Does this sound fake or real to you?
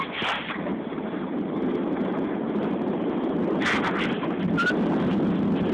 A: real